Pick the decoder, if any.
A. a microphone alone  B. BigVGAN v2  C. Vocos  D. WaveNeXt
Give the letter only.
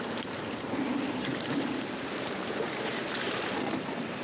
B